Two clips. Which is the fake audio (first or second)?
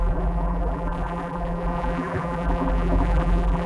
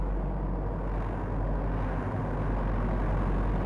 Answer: first